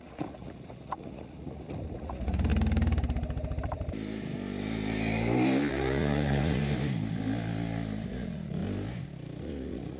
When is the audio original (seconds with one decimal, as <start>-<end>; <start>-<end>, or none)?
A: 2.5-5.7; 6.6-8.1; 8.6-9.4